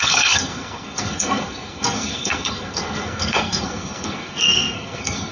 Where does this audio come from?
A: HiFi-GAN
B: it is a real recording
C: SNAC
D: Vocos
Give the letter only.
C